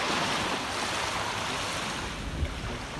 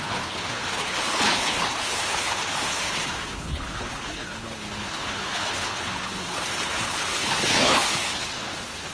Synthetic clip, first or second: second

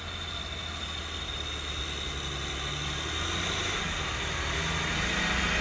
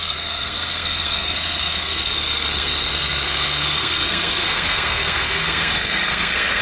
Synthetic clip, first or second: second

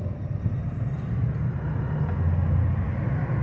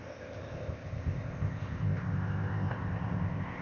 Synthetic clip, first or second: second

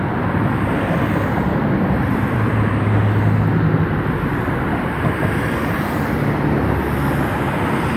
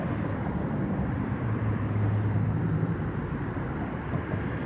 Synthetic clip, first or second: second